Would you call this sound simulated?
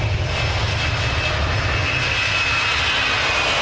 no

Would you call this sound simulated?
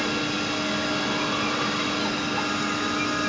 no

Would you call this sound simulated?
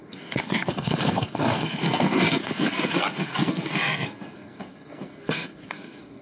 yes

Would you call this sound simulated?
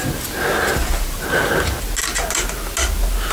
no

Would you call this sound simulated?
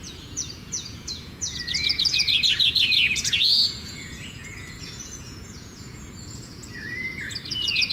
yes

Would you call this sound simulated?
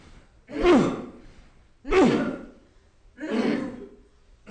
no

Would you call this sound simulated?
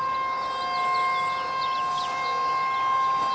no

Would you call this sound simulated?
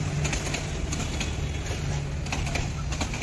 no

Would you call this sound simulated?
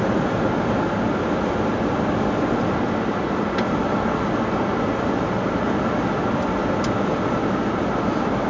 no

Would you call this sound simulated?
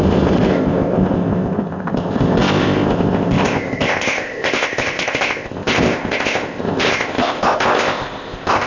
yes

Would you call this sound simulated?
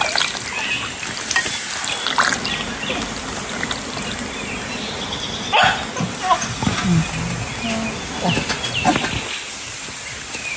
no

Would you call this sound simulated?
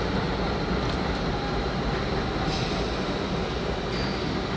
no